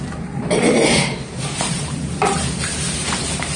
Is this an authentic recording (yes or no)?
no